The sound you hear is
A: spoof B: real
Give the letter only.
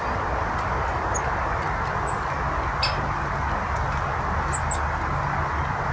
B